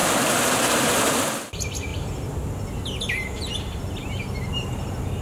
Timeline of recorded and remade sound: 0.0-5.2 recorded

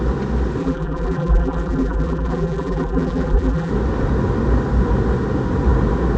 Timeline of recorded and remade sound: 0.0-0.6 recorded; 0.6-3.7 remade; 3.7-6.2 recorded

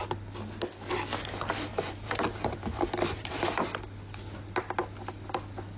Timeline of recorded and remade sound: 0.0-1.7 recorded; 1.7-3.3 remade; 3.3-5.8 recorded

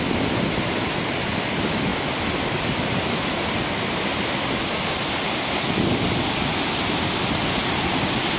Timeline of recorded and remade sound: 0.0-8.4 recorded

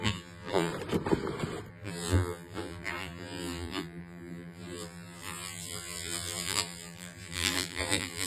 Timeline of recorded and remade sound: 0.0-0.7 remade; 0.7-1.7 recorded; 1.7-8.3 remade

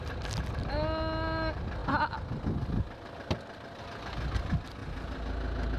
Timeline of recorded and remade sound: 0.0-5.8 recorded

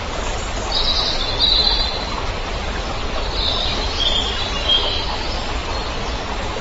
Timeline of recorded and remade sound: 0.0-1.6 recorded; 1.6-2.8 remade; 2.8-6.6 recorded

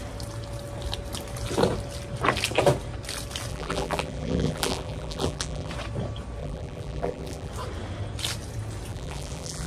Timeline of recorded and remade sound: 0.0-3.5 recorded; 3.5-5.7 remade; 5.7-6.4 recorded; 6.4-7.5 remade; 7.5-8.9 recorded; 8.9-9.7 remade